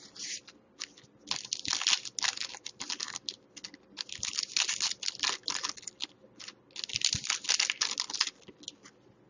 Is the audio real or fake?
real